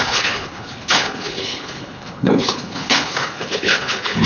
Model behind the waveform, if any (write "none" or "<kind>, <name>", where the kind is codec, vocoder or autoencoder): codec, HILCodec